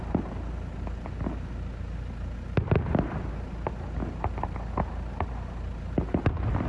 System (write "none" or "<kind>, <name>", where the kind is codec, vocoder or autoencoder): none